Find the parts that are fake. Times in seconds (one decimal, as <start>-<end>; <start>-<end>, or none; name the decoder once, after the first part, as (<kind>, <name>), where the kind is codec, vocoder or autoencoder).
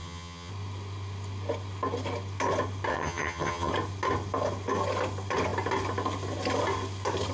0.0-0.5 (vocoder, HiFi-GAN); 2.9-3.7